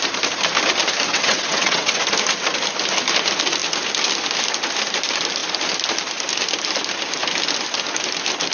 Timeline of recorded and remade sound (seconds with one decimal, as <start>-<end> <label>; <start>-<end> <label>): 0.0-1.1 recorded; 1.1-2.0 remade; 2.0-8.5 recorded